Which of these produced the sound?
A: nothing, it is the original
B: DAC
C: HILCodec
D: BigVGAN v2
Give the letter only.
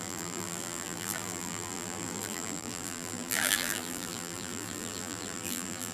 D